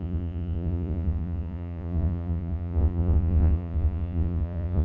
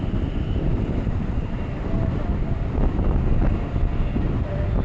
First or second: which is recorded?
second